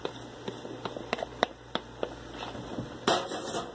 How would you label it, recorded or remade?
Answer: recorded